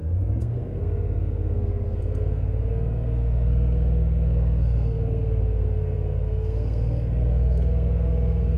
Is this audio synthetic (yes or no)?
yes